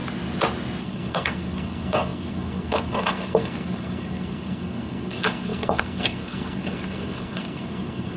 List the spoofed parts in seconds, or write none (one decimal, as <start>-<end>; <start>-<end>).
0.8-8.2